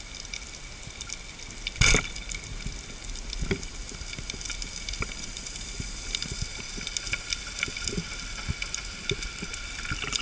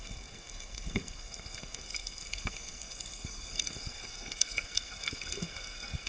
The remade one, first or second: second